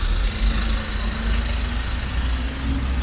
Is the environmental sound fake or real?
real